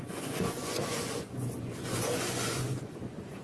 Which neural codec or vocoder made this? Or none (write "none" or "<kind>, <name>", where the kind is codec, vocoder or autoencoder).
vocoder, Vocos